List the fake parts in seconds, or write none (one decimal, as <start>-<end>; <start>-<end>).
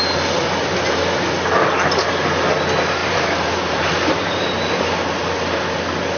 3.0-4.7